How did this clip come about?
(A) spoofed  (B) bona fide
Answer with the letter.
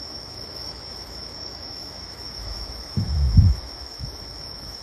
A